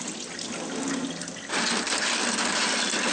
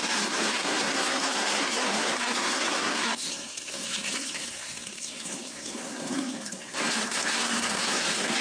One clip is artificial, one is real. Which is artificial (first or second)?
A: second